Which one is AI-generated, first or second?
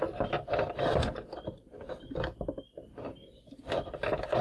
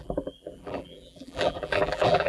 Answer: second